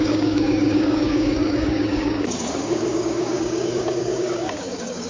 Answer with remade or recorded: remade